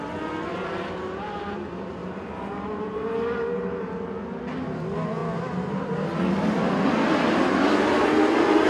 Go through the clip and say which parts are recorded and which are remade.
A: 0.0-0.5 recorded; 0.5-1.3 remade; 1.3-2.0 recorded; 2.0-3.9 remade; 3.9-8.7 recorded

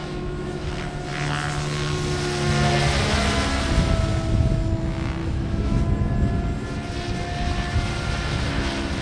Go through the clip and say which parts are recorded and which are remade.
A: 0.0-0.7 remade; 0.7-5.2 recorded; 5.2-5.8 remade; 5.8-9.0 recorded

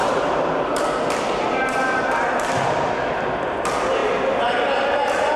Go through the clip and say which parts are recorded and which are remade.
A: 0.0-3.2 remade; 3.2-5.4 recorded

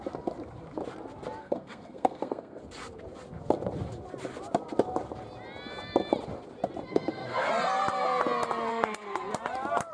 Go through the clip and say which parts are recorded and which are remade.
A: 0.0-1.4 recorded; 1.4-2.6 remade; 2.6-6.9 recorded; 6.9-7.5 remade; 7.5-8.7 recorded; 8.7-9.3 remade; 9.3-9.9 recorded